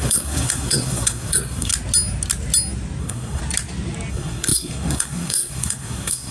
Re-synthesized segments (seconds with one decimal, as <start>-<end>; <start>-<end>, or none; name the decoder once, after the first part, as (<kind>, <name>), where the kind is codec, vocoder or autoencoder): 0.0-1.7 (codec, SNAC); 3.0-3.4; 4.1-6.3